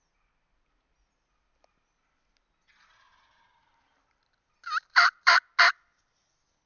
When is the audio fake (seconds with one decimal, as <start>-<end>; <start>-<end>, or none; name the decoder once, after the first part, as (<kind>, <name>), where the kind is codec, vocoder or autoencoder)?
none